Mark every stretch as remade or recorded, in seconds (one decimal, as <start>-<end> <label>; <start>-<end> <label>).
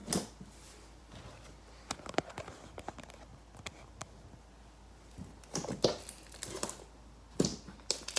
0.0-8.2 recorded